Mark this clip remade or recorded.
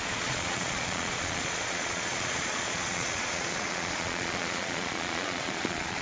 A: remade